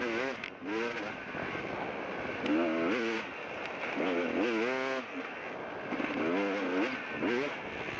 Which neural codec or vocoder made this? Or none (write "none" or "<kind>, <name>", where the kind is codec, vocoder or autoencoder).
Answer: none